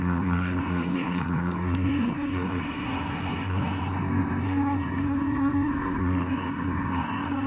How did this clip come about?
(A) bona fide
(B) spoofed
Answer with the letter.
B